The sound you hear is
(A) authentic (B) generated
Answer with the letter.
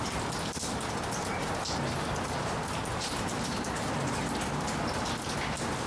A